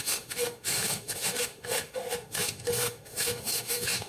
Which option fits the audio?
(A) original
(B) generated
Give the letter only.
B